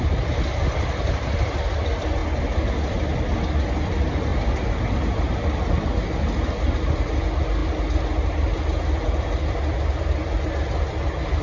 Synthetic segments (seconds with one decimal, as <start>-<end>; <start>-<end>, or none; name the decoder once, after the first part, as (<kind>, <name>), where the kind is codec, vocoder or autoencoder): none